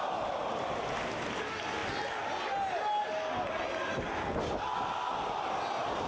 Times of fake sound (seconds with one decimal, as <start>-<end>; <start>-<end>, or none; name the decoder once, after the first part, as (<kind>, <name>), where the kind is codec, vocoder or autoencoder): none